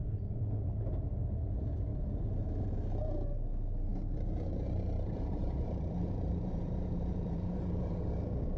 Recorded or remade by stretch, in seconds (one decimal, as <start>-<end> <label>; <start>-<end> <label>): 0.0-0.5 remade; 0.5-3.9 recorded; 3.9-8.1 remade; 8.1-8.6 recorded